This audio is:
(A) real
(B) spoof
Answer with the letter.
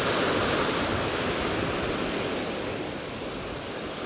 A